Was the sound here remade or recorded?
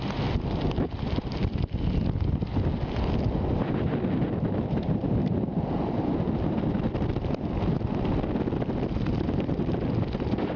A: recorded